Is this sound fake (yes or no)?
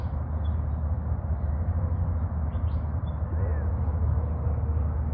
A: no